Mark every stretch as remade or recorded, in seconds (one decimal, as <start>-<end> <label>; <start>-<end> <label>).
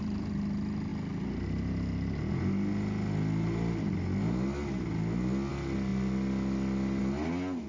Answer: 0.0-7.7 recorded